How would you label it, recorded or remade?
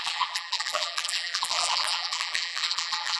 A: remade